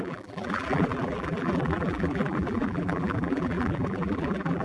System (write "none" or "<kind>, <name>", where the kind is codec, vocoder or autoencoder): vocoder, BigVGAN v2